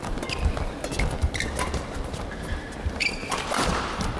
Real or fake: real